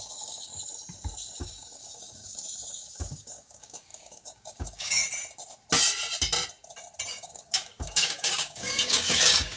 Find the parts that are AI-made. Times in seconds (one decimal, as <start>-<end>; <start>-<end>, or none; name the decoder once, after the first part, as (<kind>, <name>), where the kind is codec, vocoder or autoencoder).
0.0-0.5 (codec, DAC); 1.4-5.0; 7.1-9.6